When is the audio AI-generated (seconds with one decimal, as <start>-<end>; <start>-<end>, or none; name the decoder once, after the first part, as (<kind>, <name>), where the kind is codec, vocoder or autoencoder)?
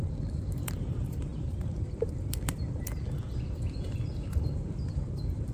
0.0-5.5 (vocoder, BigVGAN v2)